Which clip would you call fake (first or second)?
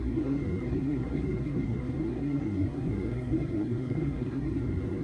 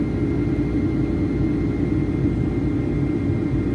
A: first